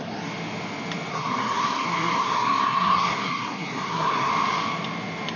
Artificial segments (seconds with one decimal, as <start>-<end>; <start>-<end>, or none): 1.1-4.3